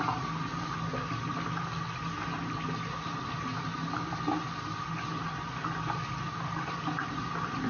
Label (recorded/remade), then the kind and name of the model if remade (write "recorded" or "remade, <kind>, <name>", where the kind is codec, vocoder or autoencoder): recorded